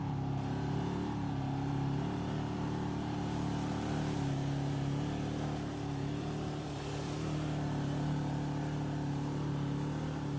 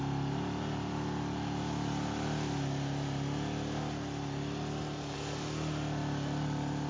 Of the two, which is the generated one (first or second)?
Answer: first